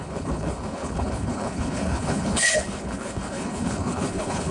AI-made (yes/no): yes